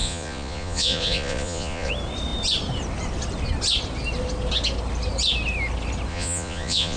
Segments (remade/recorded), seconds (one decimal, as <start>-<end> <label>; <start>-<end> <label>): 0.0-1.9 remade; 1.9-6.1 recorded; 6.1-7.0 remade